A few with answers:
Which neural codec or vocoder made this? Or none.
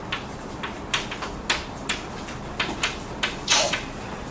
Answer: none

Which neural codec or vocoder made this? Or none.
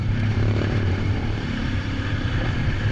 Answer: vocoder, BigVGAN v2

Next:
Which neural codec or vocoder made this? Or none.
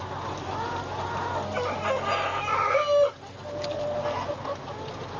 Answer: none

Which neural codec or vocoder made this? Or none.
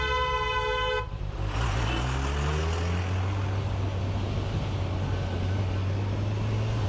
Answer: none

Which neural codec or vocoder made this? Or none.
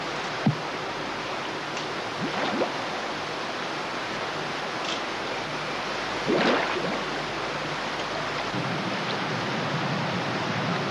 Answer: none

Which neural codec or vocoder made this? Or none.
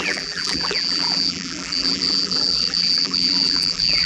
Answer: vocoder, BigVGAN v2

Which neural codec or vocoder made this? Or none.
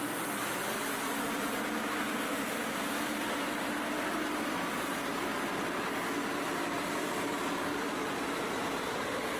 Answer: none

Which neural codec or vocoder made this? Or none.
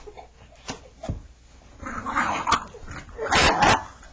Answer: none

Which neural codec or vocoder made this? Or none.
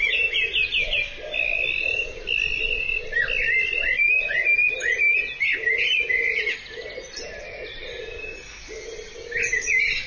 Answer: none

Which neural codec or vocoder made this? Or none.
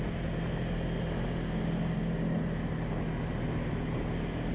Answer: none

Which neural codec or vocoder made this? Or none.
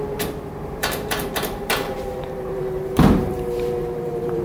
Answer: vocoder, BigVGAN v2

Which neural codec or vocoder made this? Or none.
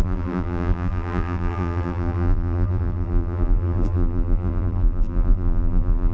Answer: vocoder, BigVGAN v2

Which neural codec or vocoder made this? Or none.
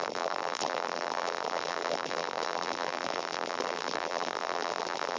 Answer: vocoder, BigVGAN v2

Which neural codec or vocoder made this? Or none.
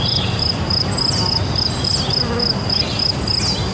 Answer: none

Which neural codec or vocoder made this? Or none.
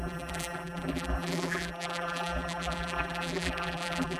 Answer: vocoder, BigVGAN v2